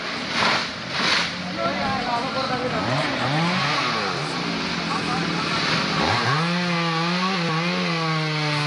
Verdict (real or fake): real